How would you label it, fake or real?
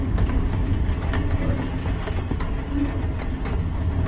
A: real